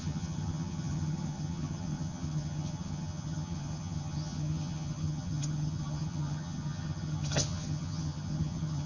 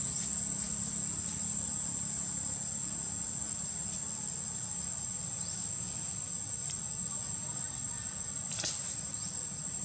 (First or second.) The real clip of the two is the second